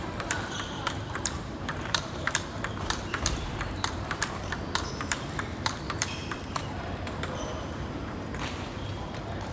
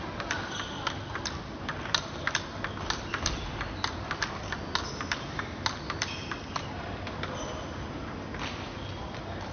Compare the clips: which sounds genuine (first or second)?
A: second